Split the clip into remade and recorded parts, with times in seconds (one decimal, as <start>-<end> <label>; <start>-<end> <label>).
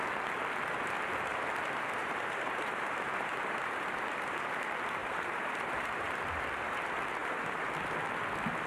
0.0-2.0 recorded; 2.0-3.9 remade; 3.9-5.0 recorded; 5.0-6.1 remade; 6.1-7.2 recorded; 7.2-7.7 remade; 7.7-8.7 recorded